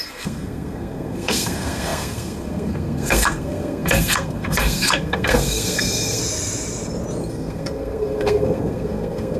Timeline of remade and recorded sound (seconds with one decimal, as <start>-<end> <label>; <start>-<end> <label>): 0.0-6.2 remade; 6.2-7.2 recorded; 7.2-9.4 remade